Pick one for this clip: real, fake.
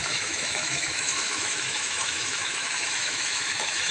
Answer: fake